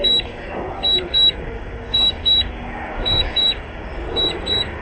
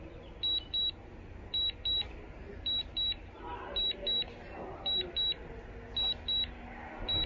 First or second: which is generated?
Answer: first